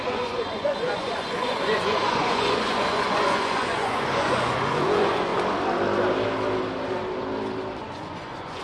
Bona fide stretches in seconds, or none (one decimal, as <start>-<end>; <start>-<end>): 5.3-7.8